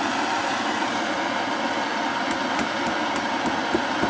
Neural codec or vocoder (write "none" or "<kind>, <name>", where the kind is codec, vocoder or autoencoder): none